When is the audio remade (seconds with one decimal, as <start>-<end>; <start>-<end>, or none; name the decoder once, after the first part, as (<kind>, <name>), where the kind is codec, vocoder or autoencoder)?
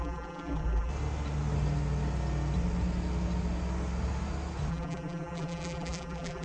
0.0-0.9 (vocoder, BigVGAN v2); 4.7-6.4